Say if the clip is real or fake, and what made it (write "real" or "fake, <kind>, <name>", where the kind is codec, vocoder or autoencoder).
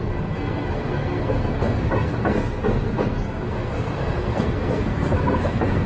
fake, codec, SNAC